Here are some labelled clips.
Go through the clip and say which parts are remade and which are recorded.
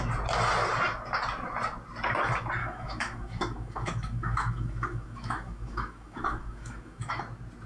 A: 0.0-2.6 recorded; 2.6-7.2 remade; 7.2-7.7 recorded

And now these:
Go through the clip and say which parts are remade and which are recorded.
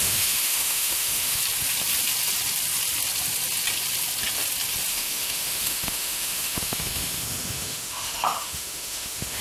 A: 0.0-1.4 remade; 1.4-4.9 recorded; 4.9-9.4 remade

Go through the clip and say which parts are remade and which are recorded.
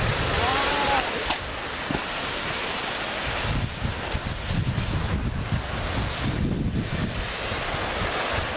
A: 0.0-8.6 recorded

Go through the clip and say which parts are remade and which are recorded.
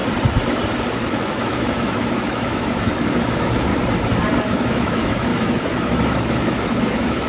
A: 0.0-1.1 recorded; 1.1-3.7 remade; 3.7-4.5 recorded; 4.5-7.3 remade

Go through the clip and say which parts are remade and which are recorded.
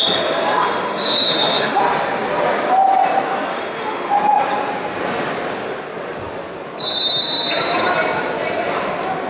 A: 0.0-0.6 recorded; 0.6-1.8 remade; 1.8-3.5 recorded; 3.5-4.1 remade; 4.1-9.3 recorded